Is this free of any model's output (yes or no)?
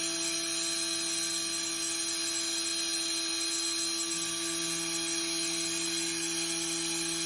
yes